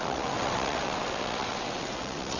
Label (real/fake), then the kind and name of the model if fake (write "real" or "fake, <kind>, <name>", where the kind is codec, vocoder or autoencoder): fake, vocoder, WaveNeXt